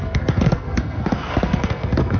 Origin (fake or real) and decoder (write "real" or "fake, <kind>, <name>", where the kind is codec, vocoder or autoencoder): fake, codec, SNAC